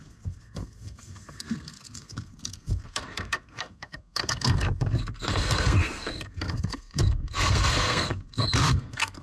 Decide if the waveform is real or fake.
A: fake